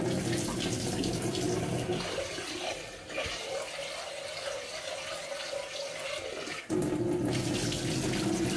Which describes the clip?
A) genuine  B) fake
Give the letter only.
A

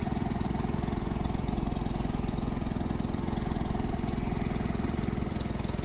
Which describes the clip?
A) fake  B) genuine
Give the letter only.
A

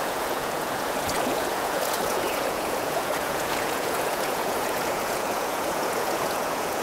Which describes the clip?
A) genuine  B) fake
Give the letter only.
B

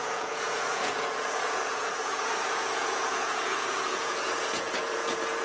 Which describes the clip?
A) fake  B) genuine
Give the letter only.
A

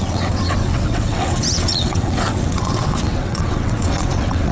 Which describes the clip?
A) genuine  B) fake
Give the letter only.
B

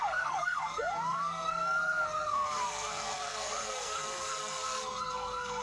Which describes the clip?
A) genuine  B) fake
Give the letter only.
B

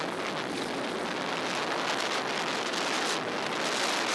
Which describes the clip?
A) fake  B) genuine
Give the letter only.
B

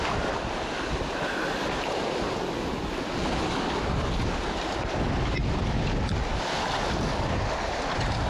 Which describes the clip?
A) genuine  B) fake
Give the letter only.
A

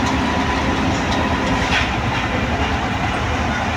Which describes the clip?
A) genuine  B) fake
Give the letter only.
A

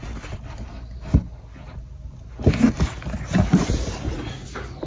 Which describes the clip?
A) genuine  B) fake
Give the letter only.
A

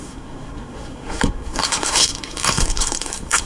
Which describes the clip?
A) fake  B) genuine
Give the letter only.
A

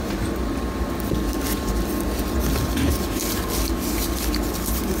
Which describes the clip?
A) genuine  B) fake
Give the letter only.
A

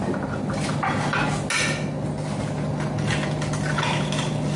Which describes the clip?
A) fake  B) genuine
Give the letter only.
B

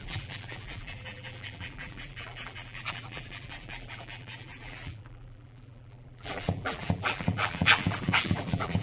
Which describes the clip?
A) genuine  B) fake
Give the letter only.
B